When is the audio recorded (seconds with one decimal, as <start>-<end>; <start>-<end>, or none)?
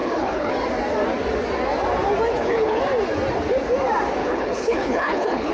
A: 0.5-2.3; 2.8-4.2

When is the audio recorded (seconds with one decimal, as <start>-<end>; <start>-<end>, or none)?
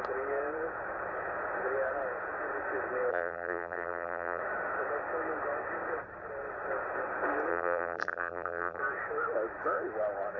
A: 0.0-3.1; 4.4-7.5; 8.8-10.4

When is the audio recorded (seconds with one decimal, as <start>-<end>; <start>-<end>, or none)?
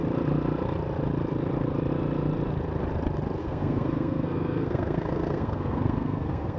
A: 0.0-3.4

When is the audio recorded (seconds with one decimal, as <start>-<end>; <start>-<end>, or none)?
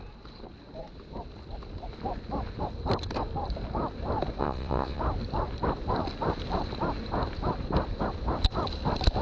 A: 0.0-4.4; 5.0-9.2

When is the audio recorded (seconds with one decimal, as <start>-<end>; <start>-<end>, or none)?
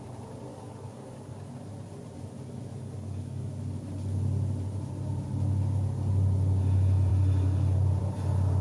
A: 0.0-0.5; 1.3-2.7; 3.5-8.6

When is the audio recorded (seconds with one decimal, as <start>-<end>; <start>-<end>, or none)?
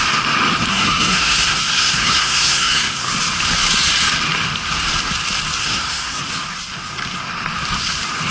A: 0.0-0.7; 3.1-5.6; 6.2-8.3